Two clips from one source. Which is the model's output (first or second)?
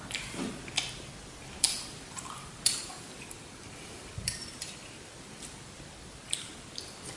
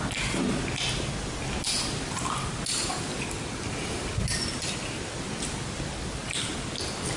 first